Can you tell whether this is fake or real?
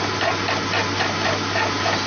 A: real